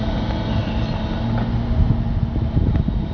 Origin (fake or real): real